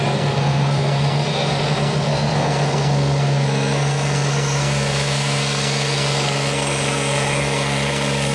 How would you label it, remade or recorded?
remade